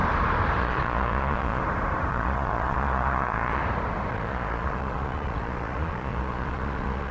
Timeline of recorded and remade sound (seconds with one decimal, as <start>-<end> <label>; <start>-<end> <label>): 0.0-0.6 recorded; 0.6-1.6 remade; 1.6-2.1 recorded; 2.1-3.6 remade; 3.6-4.1 recorded; 4.1-7.1 remade